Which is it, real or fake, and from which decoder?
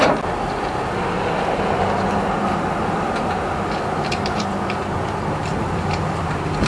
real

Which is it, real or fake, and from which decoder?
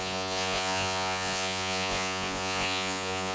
fake, vocoder, Vocos